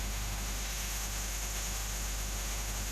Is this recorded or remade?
remade